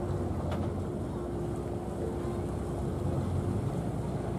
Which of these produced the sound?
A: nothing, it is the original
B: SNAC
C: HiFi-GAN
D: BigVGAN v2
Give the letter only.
A